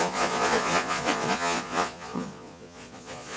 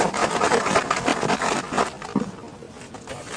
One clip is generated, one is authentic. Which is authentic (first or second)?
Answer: second